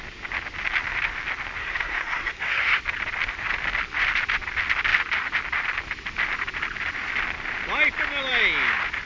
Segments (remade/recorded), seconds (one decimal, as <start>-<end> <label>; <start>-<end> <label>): 0.0-1.6 recorded; 1.6-2.8 remade; 2.8-9.1 recorded